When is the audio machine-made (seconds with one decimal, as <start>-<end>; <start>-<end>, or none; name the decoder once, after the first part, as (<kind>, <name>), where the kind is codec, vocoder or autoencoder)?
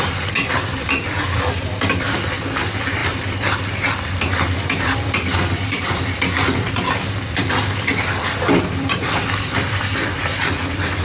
0.0-11.0 (vocoder, BigVGAN v2)